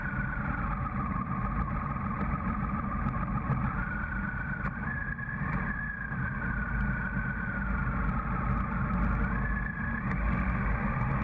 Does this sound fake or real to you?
real